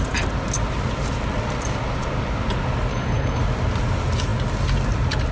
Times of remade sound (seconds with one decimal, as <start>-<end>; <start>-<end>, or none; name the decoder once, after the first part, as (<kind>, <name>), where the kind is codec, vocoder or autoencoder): 2.9-3.4 (codec, HILCodec)